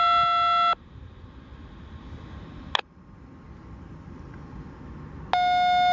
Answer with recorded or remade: recorded